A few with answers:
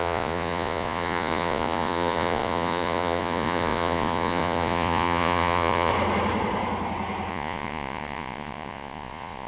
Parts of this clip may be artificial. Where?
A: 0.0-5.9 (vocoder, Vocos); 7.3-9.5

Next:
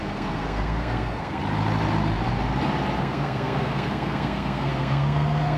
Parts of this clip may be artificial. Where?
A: 0.0-1.4 (codec, SNAC); 3.0-5.6

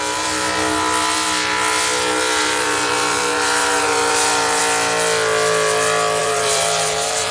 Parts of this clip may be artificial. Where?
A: 2.4-4.6 (vocoder, BigVGAN v2); 6.2-7.3

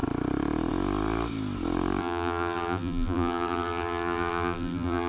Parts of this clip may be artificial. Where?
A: 2.0-5.1 (vocoder, BigVGAN v2)

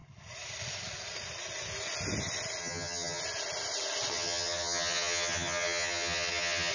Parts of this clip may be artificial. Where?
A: 2.6-3.2 (vocoder, HiFi-GAN); 4.1-6.7